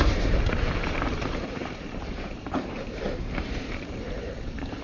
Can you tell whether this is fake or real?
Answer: fake